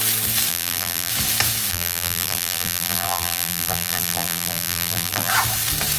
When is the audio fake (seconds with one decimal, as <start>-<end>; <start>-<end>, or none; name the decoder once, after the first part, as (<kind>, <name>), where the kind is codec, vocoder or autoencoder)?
0.5-1.1 (vocoder, BigVGAN v2); 1.7-5.3